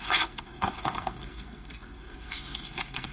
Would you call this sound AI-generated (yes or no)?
yes